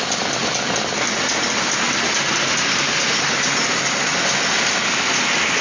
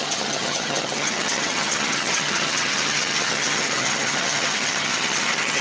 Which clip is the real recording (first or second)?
first